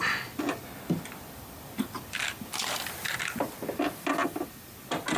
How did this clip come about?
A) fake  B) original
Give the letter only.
B